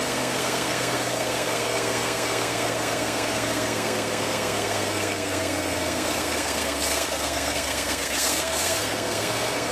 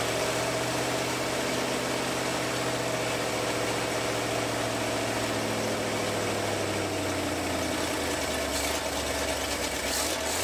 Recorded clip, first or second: second